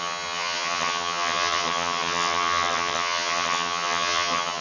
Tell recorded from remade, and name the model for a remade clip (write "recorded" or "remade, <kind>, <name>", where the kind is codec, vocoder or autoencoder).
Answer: remade, vocoder, HiFi-GAN